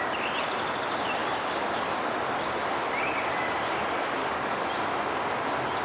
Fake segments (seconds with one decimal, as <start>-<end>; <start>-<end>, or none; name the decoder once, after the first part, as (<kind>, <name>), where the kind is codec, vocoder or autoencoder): 4.2-4.7 (codec, DAC)